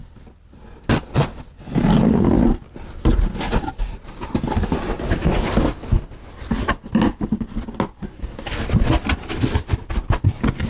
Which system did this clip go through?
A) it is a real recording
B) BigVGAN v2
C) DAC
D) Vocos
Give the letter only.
A